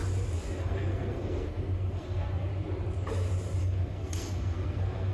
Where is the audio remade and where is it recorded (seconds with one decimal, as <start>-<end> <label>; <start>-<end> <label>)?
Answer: 0.0-0.6 recorded; 0.6-2.5 remade; 2.5-3.6 recorded; 3.6-5.1 remade